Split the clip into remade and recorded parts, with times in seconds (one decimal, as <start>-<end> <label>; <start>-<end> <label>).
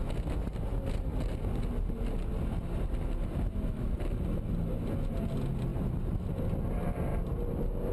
0.0-7.9 recorded